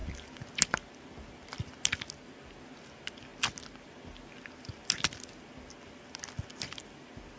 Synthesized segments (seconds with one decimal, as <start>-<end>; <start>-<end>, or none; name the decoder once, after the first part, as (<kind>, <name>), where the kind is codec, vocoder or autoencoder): none